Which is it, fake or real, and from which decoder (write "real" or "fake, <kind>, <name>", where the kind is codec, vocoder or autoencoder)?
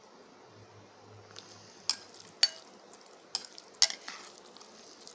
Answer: real